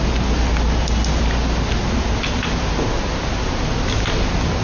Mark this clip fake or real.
real